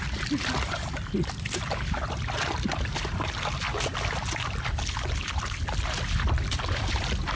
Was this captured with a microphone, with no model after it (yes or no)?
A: yes